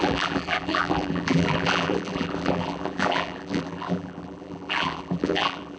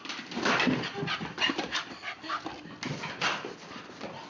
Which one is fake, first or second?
first